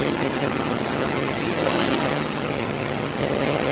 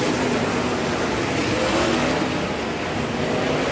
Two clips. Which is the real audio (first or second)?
second